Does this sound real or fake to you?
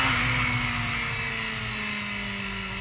real